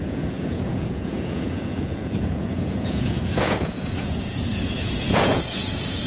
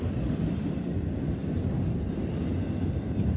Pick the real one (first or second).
second